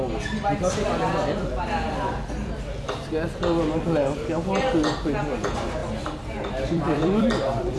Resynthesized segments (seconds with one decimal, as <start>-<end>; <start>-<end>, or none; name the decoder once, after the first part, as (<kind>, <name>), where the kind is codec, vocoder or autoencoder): 5.8-7.8 (vocoder, BigVGAN v2)